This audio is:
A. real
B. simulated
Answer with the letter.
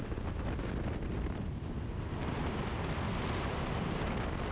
A